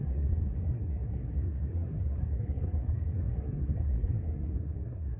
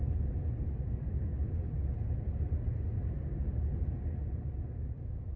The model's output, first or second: first